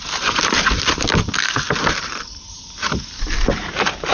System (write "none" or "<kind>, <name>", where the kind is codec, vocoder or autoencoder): none